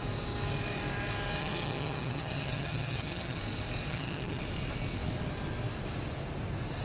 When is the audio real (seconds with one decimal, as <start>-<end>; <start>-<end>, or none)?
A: 0.0-1.4; 3.4-3.9; 4.4-6.8